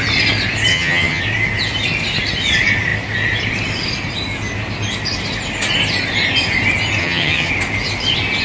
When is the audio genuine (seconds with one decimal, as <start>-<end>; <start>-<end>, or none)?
0.0-0.7; 1.2-7.0; 7.5-8.4